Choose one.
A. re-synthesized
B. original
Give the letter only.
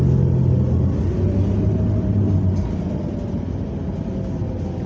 B